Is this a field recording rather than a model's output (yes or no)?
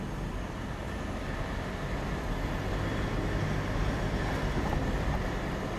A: yes